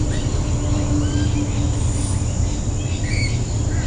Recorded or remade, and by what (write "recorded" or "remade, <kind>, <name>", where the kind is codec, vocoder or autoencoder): recorded